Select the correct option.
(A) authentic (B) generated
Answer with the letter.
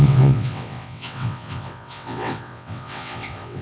B